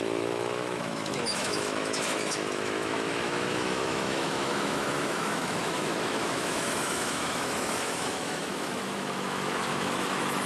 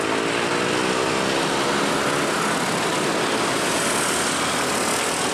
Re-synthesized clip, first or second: first